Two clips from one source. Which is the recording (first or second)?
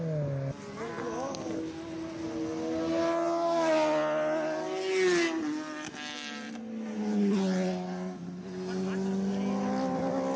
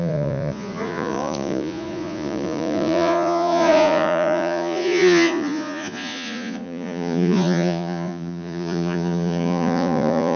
first